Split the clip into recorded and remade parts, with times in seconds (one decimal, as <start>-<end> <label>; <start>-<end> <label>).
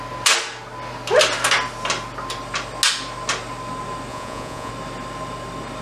0.0-4.1 recorded; 4.1-4.7 remade; 4.7-5.8 recorded